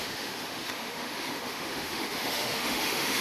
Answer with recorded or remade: remade